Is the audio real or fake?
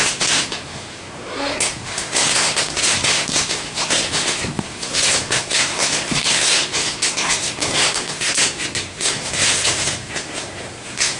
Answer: fake